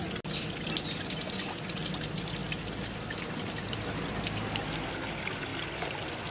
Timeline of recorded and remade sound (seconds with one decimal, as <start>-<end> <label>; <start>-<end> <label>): 0.0-6.3 recorded